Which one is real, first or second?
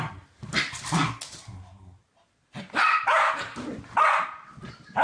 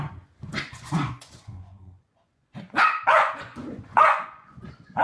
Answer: first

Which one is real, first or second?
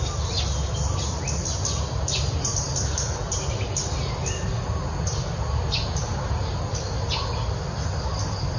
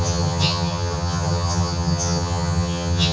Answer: first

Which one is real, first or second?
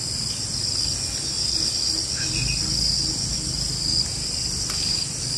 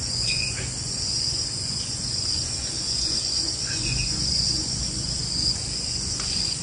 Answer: first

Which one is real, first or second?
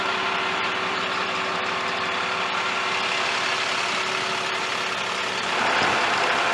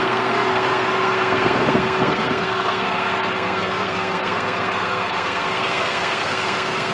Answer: first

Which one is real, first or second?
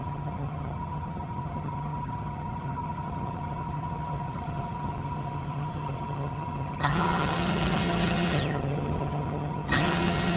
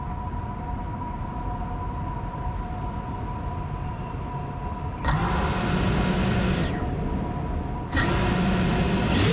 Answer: second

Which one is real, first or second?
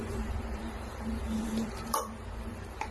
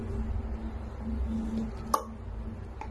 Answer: second